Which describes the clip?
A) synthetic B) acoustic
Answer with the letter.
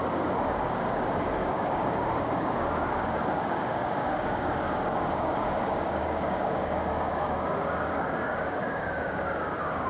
A